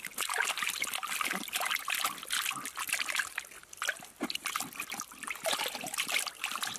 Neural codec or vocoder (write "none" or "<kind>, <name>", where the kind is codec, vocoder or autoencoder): none